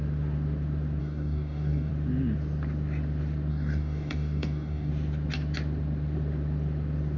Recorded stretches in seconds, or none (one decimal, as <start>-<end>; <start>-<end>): 0.0-1.0; 1.9-3.5; 4.9-7.2